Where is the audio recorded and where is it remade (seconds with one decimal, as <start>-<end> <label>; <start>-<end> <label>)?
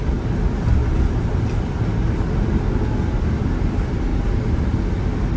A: 0.0-5.4 recorded